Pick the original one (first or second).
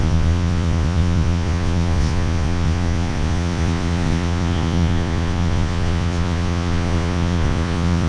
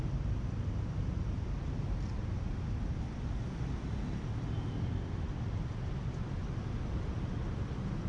second